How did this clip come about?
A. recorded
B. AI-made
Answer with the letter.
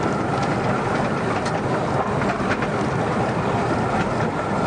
A